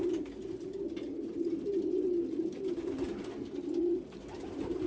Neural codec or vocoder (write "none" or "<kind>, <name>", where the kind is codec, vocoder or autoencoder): none